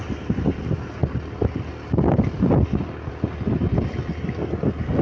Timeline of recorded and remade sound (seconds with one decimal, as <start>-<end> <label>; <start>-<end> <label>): 0.0-5.0 recorded